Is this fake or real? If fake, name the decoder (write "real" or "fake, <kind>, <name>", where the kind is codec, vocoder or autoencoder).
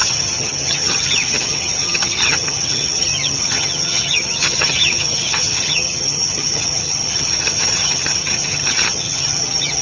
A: fake, vocoder, HiFi-GAN